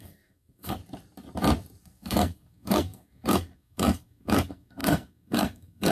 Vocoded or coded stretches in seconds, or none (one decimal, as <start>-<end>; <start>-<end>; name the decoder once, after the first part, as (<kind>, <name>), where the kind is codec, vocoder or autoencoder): 0.0-0.8 (codec, SNAC); 1.8-5.9